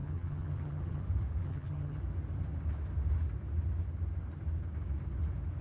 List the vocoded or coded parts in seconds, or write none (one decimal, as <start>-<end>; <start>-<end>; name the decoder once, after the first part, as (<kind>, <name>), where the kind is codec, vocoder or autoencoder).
0.0-1.0 (vocoder, HiFi-GAN); 1.4-2.0